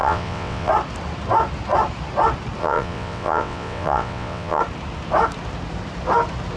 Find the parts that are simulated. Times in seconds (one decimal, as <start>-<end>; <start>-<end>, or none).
0.0-0.7; 2.6-4.6